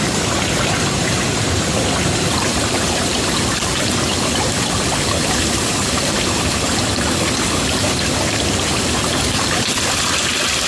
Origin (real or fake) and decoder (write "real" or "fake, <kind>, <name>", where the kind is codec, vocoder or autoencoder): real